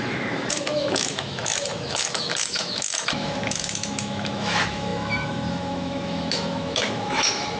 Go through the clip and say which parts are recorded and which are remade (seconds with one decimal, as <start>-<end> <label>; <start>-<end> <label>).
0.0-7.6 remade